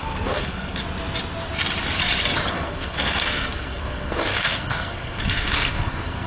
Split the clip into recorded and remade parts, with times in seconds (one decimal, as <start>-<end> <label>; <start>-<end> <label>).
0.0-0.8 remade; 0.8-2.5 recorded; 2.5-6.3 remade